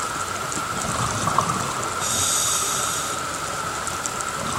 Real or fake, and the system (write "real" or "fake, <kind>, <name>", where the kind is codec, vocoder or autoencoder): real